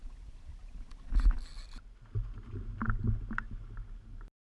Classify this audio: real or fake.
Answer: real